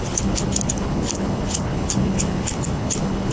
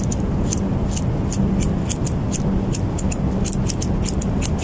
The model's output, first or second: first